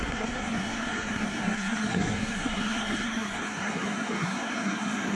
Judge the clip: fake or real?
fake